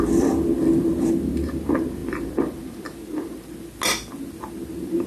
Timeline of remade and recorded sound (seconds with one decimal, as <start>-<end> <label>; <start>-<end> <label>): 0.0-5.1 recorded